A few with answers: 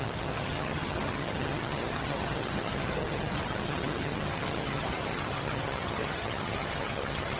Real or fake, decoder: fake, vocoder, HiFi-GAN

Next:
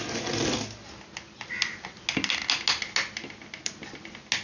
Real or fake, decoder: real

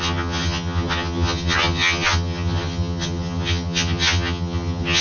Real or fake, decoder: fake, vocoder, HiFi-GAN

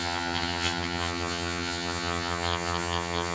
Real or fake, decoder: fake, vocoder, HiFi-GAN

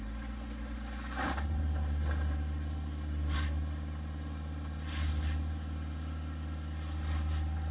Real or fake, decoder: real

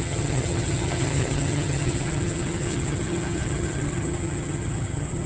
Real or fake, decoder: fake, vocoder, HiFi-GAN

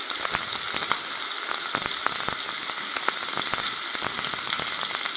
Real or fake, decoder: real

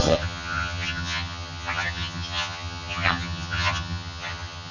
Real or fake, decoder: fake, vocoder, HiFi-GAN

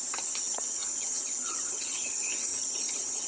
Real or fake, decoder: fake, vocoder, HiFi-GAN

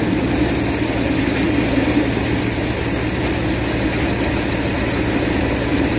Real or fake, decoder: real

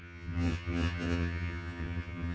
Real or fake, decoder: fake, vocoder, HiFi-GAN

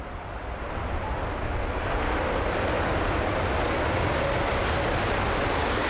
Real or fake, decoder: real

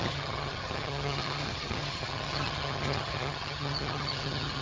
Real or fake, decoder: fake, vocoder, HiFi-GAN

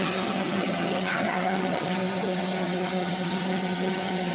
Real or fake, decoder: fake, vocoder, HiFi-GAN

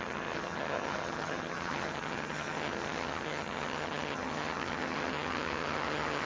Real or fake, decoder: fake, vocoder, HiFi-GAN